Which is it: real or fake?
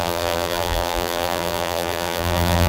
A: fake